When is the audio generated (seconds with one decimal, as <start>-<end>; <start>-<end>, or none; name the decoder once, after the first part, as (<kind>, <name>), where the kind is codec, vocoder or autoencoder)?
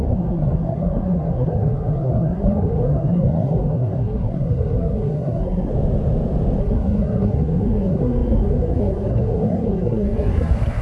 0.0-5.7 (codec, SNAC); 6.6-10.8